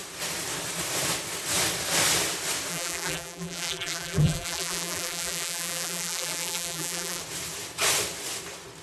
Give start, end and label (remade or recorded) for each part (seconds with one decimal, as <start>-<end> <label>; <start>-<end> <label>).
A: 0.0-2.7 recorded; 2.7-7.2 remade; 7.2-8.8 recorded